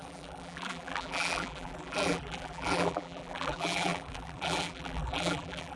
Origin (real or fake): fake